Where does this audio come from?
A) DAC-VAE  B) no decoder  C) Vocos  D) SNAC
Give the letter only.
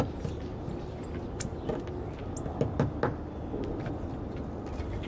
B